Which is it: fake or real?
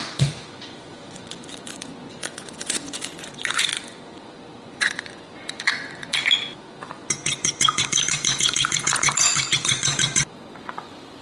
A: fake